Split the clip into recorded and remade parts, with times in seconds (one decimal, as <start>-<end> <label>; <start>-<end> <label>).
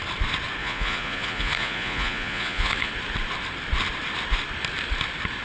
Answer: 0.0-0.6 recorded; 0.6-2.9 remade; 2.9-5.4 recorded